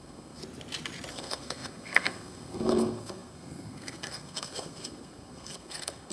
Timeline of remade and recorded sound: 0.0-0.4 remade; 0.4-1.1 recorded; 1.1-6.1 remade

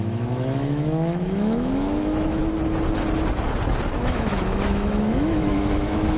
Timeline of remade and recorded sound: 0.0-2.4 remade; 2.4-3.9 recorded; 3.9-6.2 remade

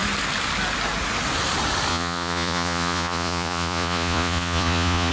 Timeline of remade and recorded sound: 0.0-1.9 recorded; 1.9-5.1 remade

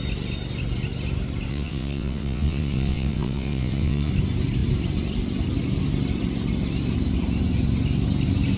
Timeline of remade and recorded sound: 0.0-1.5 recorded; 1.5-4.1 remade; 4.1-8.6 recorded

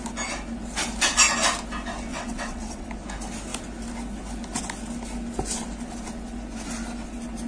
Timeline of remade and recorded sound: 0.0-2.1 recorded; 2.1-2.9 remade; 2.9-7.5 recorded

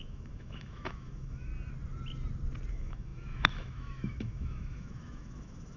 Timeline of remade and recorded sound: 0.0-1.5 remade; 1.5-2.7 recorded; 2.7-5.8 remade

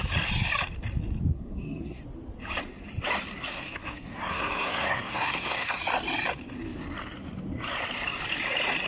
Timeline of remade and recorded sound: 0.0-1.3 recorded; 1.3-2.0 remade; 2.0-3.6 recorded; 3.6-5.8 remade; 5.8-8.9 recorded